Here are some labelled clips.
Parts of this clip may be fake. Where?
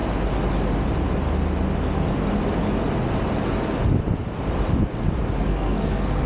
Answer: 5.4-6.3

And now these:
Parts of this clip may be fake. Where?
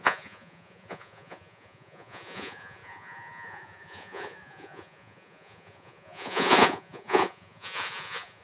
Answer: 0.0-8.4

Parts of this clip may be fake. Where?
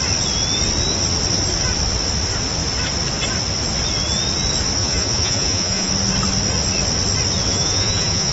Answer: 4.8-5.9; 7.5-8.3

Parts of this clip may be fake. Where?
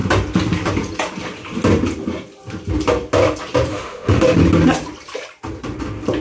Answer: 3.7-4.4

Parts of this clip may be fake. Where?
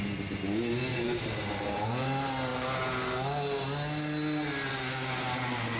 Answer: 0.9-2.0